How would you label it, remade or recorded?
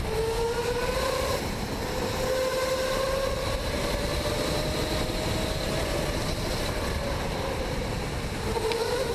recorded